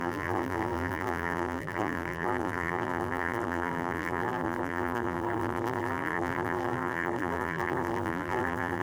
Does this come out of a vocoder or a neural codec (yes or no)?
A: yes